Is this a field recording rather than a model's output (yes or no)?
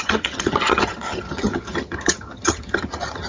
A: no